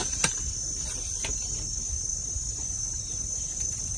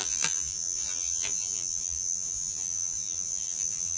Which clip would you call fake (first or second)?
second